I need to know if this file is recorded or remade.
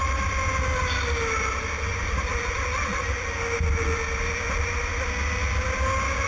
recorded